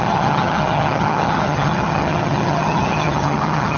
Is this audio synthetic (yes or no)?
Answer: yes